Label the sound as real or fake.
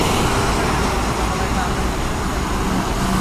real